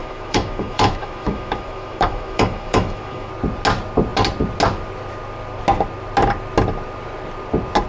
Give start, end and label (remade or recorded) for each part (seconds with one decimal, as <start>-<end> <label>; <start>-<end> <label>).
0.0-3.3 remade; 3.3-7.9 recorded

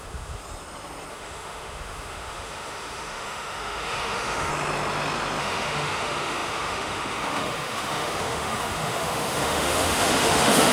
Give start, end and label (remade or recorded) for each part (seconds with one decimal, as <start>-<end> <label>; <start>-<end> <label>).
0.0-0.4 remade; 0.4-1.1 recorded; 1.1-4.5 remade; 4.5-5.4 recorded; 5.4-10.7 remade